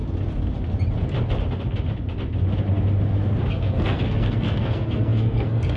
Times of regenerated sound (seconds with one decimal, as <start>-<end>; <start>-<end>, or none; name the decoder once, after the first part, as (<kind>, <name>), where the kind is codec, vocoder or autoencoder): 3.5-5.8 (codec, SNAC)